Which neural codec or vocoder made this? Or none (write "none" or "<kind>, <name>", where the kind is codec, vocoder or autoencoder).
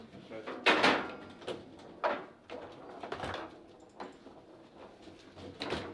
none